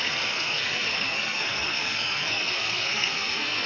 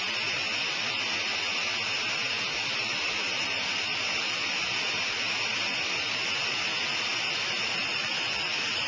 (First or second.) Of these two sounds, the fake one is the first